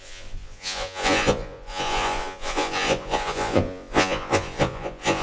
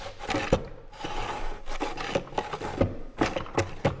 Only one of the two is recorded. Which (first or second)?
second